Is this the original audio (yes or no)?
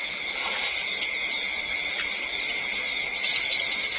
yes